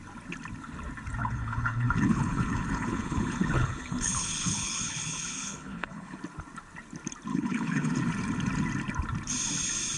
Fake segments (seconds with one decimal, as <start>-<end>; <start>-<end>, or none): 1.2-6.2; 7.3-7.9